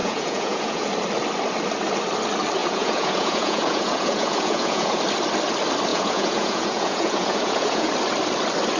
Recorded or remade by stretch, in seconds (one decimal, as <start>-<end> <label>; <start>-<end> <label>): 0.0-0.9 remade; 0.9-2.6 recorded; 2.6-5.0 remade; 5.0-5.9 recorded; 5.9-7.9 remade; 7.9-8.8 recorded